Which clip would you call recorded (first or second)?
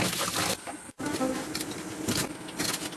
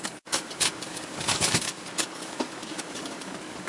first